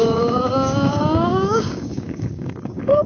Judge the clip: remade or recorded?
remade